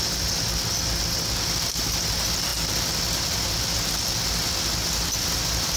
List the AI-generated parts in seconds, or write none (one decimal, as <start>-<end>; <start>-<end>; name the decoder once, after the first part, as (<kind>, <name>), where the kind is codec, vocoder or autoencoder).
none